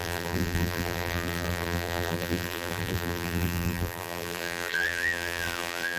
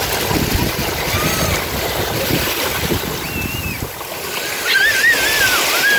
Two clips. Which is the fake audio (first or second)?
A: first